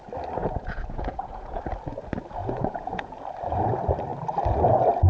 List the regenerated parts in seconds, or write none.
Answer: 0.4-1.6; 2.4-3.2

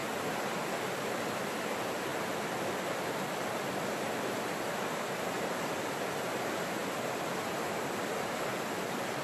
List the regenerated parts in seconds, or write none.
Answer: 6.8-8.0

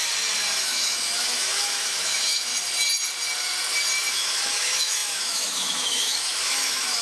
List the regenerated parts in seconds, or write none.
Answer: 0.6-2.5; 4.1-7.0

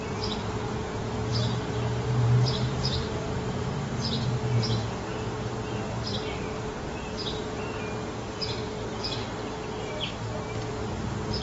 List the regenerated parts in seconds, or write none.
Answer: 1.3-3.9

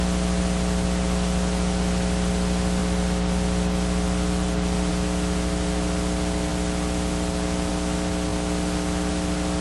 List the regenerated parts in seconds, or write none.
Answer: 2.8-4.9

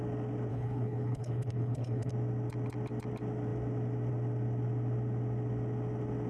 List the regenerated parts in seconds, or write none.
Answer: 0.5-2.1

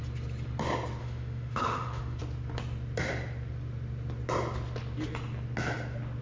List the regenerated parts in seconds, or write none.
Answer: 1.0-2.2

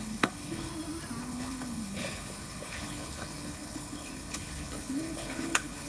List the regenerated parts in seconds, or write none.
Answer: 0.0-0.7; 1.2-5.9